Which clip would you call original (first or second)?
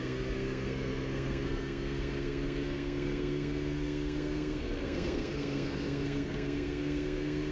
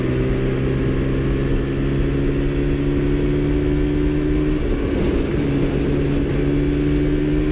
second